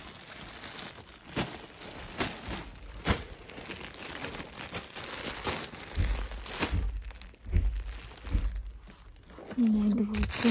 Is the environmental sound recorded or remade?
recorded